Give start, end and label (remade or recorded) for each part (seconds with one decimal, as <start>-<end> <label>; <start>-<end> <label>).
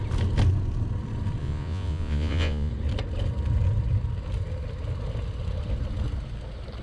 0.0-1.4 recorded; 1.4-2.7 remade; 2.7-6.8 recorded